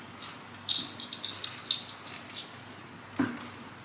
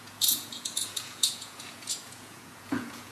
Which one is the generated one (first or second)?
second